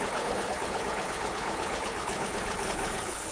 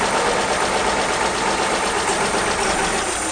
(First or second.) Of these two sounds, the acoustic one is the second